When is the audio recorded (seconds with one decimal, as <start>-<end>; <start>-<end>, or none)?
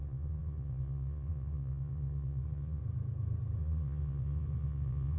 2.8-3.6